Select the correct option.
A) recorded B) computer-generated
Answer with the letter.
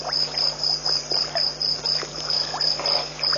A